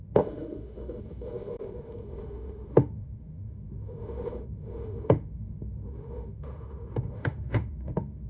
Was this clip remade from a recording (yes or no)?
yes